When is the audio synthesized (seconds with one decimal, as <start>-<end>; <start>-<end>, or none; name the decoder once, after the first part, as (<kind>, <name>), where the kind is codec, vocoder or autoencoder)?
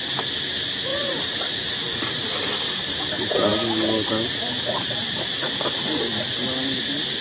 0.9-3.0 (vocoder, BigVGAN v2); 3.5-4.1; 5.0-6.4